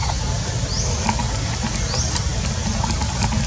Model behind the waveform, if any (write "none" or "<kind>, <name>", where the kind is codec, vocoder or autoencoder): none